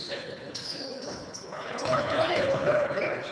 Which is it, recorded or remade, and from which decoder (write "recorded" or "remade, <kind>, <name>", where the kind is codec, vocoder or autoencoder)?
remade, codec, HILCodec